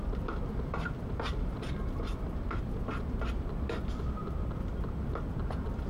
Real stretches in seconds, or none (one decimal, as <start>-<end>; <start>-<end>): 0.0-5.9